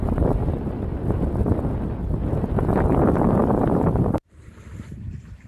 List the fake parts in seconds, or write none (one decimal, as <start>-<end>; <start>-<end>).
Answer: 3.4-4.5